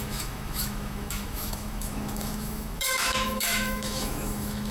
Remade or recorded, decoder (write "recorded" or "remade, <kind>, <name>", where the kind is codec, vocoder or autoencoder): remade, autoencoder, DAC-VAE